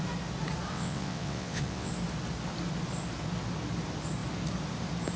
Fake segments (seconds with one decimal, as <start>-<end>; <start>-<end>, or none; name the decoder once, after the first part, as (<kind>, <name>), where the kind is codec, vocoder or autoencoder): 0.7-1.9 (vocoder, WaveNeXt)